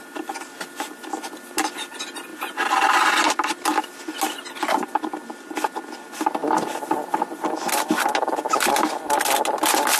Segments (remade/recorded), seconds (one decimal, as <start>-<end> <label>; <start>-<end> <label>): 0.0-10.0 recorded